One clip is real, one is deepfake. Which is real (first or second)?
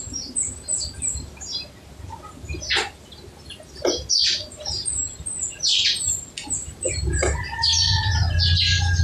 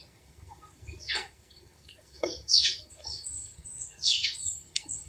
first